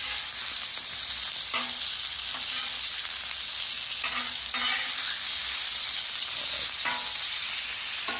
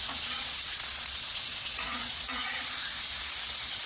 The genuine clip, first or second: first